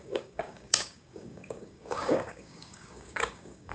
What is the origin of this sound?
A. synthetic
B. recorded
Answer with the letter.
A